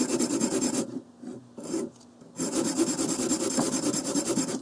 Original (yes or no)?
yes